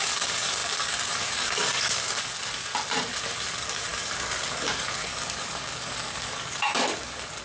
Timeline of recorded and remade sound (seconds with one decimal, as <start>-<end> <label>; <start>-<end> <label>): 0.0-2.7 remade; 2.7-3.2 recorded; 3.2-7.4 remade